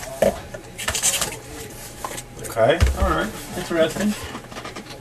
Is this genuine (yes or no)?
no